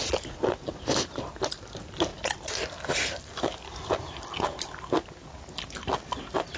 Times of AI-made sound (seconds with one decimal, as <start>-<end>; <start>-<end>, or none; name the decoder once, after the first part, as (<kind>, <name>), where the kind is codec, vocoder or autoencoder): none